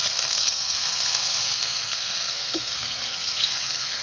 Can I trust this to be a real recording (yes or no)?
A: no